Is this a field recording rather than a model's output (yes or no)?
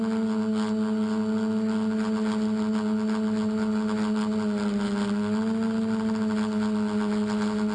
yes